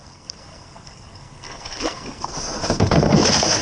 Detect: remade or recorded remade